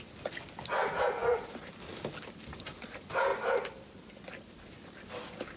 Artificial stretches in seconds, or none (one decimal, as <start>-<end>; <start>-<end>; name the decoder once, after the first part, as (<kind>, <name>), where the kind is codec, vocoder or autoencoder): none